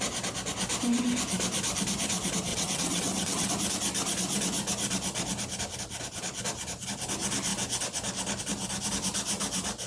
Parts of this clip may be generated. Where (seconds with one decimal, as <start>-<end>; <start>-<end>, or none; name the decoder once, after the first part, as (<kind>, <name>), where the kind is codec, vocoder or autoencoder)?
2.5-3.5 (vocoder, WaveNeXt)